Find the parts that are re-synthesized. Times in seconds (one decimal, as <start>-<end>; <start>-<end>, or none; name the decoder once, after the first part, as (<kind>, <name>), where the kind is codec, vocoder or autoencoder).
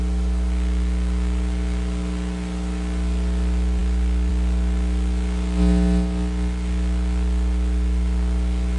none